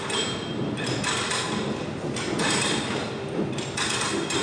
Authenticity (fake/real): real